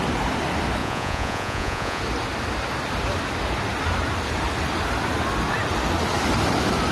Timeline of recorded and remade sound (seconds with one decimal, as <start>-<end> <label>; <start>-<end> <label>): 0.0-0.8 recorded; 0.8-2.0 remade; 2.0-6.9 recorded